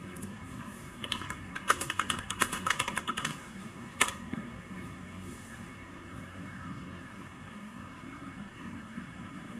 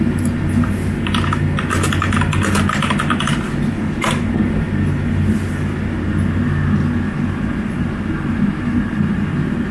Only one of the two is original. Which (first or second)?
second